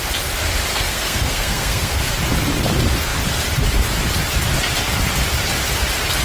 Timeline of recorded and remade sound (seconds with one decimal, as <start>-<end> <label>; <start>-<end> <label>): 0.0-0.7 recorded; 0.7-2.1 remade; 2.1-6.2 recorded